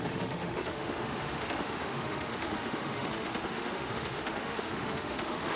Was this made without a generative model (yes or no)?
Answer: no